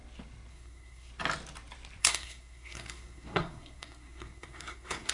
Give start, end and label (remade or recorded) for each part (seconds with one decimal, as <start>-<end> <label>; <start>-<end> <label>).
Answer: 0.0-0.5 recorded; 0.5-1.1 remade; 1.1-2.0 recorded; 2.0-5.1 remade